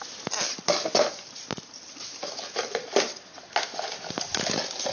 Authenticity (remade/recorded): recorded